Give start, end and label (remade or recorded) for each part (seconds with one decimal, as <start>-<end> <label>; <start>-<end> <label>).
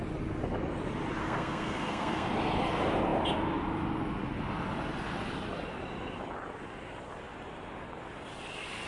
0.0-1.2 recorded; 1.2-2.3 remade; 2.3-8.9 recorded